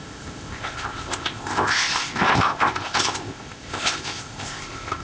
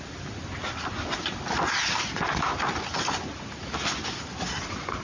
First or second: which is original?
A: second